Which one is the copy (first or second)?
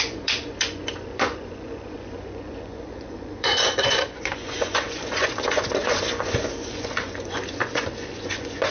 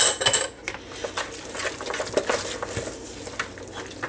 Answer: first